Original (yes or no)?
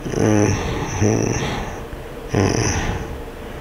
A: yes